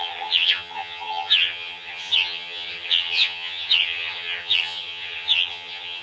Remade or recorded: remade